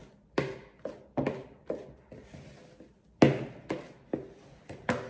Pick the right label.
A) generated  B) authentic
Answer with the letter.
B